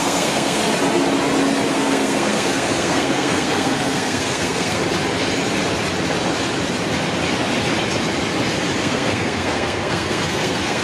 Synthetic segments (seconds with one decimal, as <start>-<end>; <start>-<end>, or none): 0.0-0.6; 1.7-4.8; 8.8-10.8